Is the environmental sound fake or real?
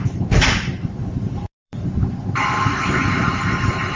fake